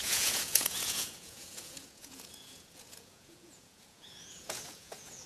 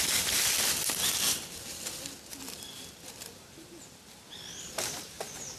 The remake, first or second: first